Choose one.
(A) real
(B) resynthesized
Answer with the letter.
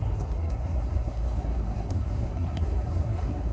B